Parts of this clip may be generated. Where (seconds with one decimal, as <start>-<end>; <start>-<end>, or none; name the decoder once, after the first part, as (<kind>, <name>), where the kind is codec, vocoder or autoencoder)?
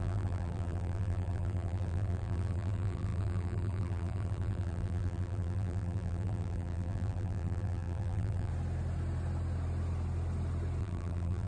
0.0-8.5 (vocoder, BigVGAN v2); 10.8-11.5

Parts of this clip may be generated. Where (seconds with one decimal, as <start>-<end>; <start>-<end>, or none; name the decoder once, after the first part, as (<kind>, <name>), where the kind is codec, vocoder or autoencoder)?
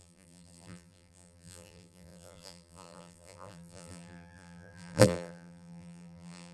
0.0-6.5 (vocoder, BigVGAN v2)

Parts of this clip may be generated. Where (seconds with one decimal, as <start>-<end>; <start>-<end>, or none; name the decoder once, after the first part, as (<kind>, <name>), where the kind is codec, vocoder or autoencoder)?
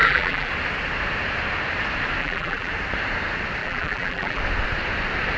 0.0-0.5 (vocoder, BigVGAN v2); 2.2-2.7; 3.6-4.4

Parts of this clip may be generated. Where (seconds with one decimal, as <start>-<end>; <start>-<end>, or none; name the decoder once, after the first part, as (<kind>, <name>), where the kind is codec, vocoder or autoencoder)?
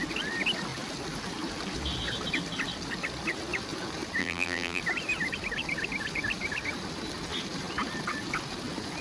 4.2-4.8 (vocoder, BigVGAN v2)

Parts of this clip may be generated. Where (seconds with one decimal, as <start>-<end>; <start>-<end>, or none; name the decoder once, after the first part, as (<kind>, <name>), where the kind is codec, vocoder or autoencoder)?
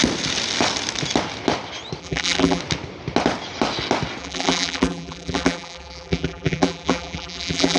2.0-2.6 (vocoder, BigVGAN v2); 4.2-7.8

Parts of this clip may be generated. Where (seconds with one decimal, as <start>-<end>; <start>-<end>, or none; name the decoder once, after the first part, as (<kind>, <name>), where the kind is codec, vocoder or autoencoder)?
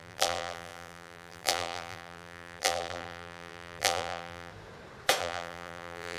0.0-4.5 (vocoder, BigVGAN v2); 5.2-6.2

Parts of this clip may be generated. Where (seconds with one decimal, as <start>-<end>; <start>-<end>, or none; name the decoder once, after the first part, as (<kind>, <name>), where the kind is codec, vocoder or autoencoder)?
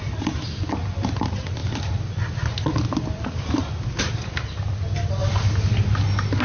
none